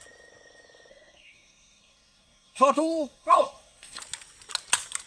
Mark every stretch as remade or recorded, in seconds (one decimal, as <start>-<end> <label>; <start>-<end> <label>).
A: 0.0-0.9 recorded; 0.9-4.0 remade; 4.0-5.1 recorded